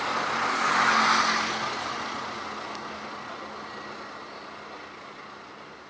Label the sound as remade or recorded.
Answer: recorded